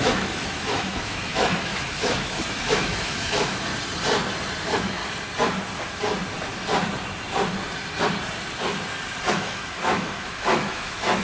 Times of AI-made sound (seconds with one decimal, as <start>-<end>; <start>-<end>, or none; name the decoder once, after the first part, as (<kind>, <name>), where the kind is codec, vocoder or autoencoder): 0.0-3.7 (autoencoder, DAC-VAE); 4.6-5.0; 9.3-11.2